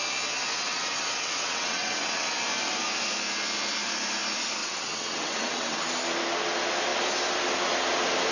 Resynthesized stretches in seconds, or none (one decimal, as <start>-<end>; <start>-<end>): 0.5-2.3; 4.6-5.8